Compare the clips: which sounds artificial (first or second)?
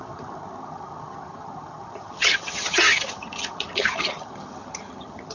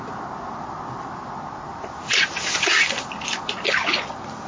first